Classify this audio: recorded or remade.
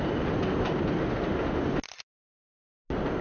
recorded